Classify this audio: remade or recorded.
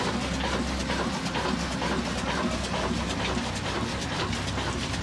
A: recorded